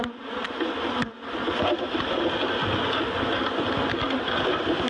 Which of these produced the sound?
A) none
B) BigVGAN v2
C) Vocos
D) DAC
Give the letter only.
A